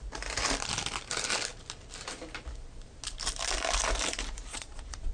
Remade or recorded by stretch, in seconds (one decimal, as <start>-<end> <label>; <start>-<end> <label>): 0.0-4.5 recorded; 4.5-5.1 remade